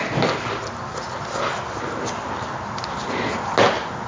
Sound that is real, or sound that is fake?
real